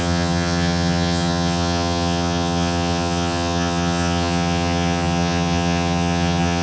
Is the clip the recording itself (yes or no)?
no